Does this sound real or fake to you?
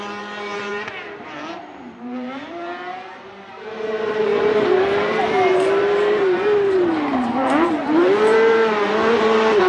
fake